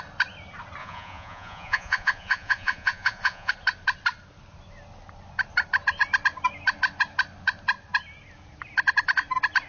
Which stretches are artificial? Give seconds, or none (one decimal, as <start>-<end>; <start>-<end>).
0.8-3.5